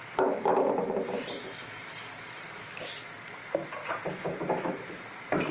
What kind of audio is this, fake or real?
real